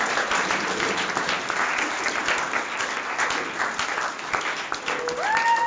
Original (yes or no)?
yes